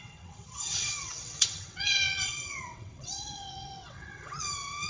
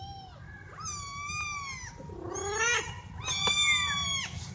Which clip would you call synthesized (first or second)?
first